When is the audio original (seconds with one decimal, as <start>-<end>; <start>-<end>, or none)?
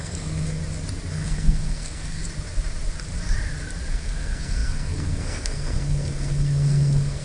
0.6-1.1; 2.2-3.9